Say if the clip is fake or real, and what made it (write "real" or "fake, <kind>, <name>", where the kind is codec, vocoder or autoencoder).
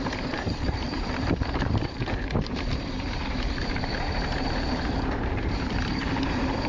fake, vocoder, BigVGAN v2